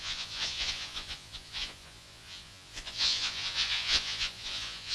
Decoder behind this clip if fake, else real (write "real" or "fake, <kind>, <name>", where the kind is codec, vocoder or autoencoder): fake, vocoder, Vocos